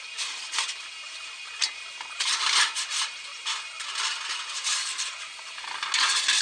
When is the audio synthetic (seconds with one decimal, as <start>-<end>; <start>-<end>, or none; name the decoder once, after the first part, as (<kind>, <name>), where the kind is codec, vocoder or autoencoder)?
none

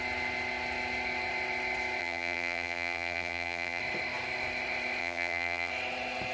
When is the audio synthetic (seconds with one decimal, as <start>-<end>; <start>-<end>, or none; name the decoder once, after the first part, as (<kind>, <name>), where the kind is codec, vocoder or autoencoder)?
2.0-3.8 (vocoder, BigVGAN v2); 5.0-5.7

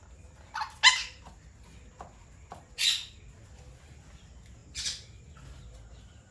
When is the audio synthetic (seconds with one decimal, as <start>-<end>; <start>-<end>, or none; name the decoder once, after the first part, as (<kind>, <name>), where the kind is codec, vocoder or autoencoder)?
2.2-3.6 (vocoder, BigVGAN v2)

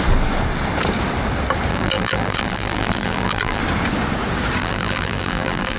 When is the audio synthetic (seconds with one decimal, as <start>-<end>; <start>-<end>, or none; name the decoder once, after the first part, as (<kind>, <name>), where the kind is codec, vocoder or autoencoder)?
1.7-3.6 (vocoder, BigVGAN v2); 4.6-5.8

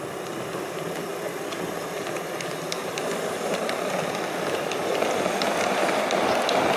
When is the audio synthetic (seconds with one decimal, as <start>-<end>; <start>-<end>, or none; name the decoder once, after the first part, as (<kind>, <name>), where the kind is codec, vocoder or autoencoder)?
2.8-4.0 (vocoder, BigVGAN v2); 4.9-6.2

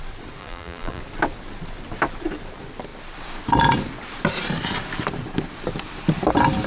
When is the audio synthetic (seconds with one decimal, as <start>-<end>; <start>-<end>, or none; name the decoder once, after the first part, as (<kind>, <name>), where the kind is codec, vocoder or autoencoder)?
0.4-1.0 (vocoder, BigVGAN v2)

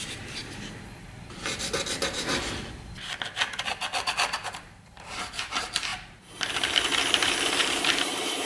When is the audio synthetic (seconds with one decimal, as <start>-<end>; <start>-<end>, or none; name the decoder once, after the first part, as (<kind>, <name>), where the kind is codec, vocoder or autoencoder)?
0.0-0.4 (vocoder, BigVGAN v2); 4.3-8.5

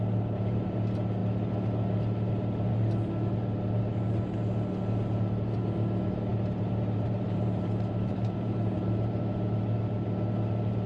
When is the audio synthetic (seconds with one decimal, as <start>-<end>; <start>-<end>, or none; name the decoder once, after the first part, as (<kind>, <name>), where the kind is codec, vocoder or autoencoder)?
6.3-9.2 (vocoder, BigVGAN v2)